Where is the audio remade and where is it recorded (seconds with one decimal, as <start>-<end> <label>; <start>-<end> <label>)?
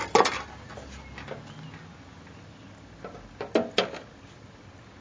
0.0-5.0 recorded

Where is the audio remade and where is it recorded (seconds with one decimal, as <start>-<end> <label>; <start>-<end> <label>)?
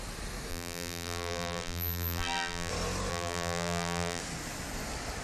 0.0-0.5 recorded; 0.5-2.7 remade; 2.7-3.1 recorded; 3.1-4.2 remade; 4.2-5.2 recorded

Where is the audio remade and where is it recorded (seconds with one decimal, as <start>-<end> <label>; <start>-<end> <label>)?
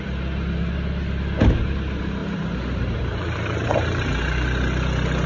0.0-2.2 recorded; 2.2-4.3 remade; 4.3-5.3 recorded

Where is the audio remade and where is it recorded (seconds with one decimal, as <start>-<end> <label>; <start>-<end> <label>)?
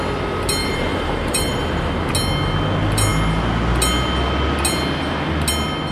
0.0-0.6 recorded; 0.6-1.9 remade; 1.9-5.9 recorded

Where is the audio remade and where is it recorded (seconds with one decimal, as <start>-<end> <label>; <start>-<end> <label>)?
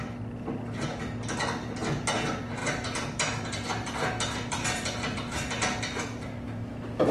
0.0-2.6 recorded; 2.6-6.0 remade; 6.0-7.1 recorded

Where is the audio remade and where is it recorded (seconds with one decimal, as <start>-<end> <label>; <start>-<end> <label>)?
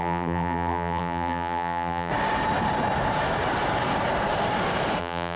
0.0-2.1 remade; 2.1-5.0 recorded; 5.0-5.4 remade